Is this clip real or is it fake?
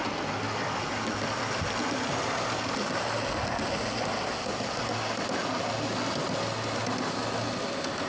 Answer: real